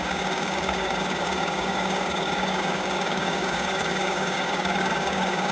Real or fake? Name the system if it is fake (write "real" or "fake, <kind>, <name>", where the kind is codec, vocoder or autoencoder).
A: fake, codec, DAC